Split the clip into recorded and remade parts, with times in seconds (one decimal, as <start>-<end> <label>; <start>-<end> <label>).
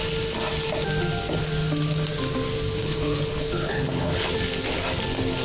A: 0.0-2.8 recorded; 2.8-4.3 remade; 4.3-5.4 recorded